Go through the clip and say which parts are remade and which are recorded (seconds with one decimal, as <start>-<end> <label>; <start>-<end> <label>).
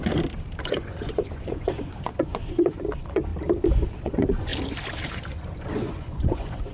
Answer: 0.0-0.7 recorded; 0.7-3.3 remade; 3.3-3.9 recorded; 3.9-4.5 remade; 4.5-5.3 recorded; 5.3-6.7 remade